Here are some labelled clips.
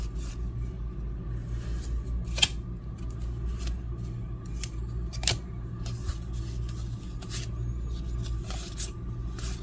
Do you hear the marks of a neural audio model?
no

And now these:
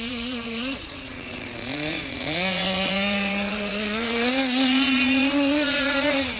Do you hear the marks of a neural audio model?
yes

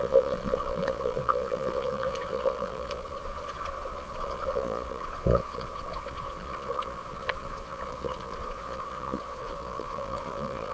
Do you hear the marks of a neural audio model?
yes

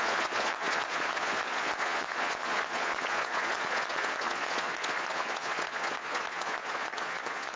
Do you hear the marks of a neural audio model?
yes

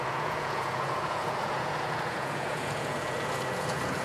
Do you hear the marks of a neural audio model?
yes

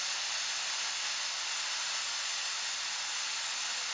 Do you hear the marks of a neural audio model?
no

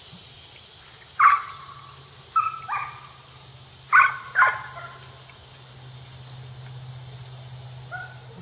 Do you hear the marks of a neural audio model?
no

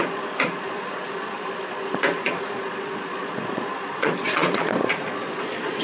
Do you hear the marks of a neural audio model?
yes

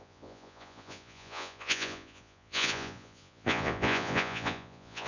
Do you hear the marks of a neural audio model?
yes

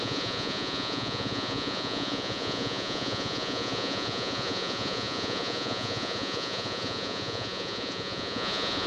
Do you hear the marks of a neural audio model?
yes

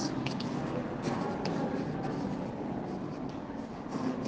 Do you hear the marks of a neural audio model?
no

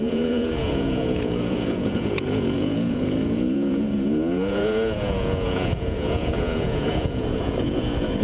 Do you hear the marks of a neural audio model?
yes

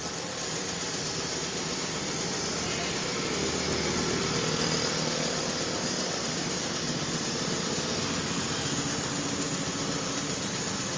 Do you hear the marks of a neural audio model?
no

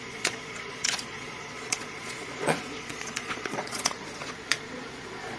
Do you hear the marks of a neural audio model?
yes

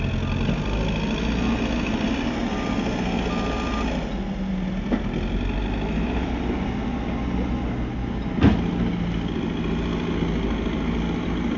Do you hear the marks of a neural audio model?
no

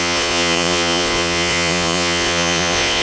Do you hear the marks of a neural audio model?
yes